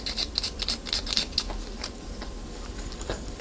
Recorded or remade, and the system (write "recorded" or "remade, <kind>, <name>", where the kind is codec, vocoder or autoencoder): recorded